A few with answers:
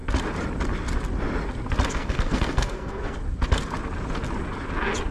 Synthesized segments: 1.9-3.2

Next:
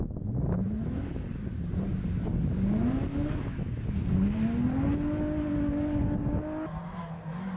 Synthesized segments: none

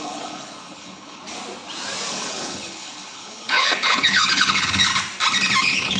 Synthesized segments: 0.0-1.2; 2.1-4.9; 5.6-6.0

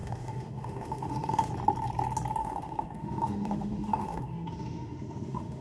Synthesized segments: 0.0-1.5; 2.4-5.6

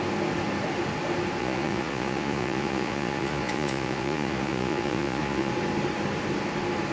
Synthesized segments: 1.4-5.5

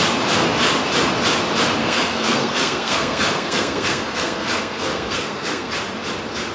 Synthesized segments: 1.8-5.7

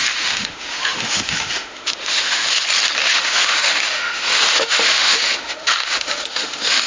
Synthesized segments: 0.0-2.6; 3.0-6.9

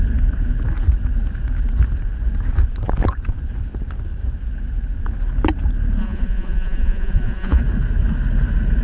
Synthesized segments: 6.0-7.6